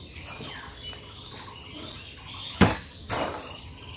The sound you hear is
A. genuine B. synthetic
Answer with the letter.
A